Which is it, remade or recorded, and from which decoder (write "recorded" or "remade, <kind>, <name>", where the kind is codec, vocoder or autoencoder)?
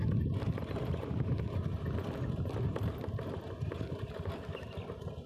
recorded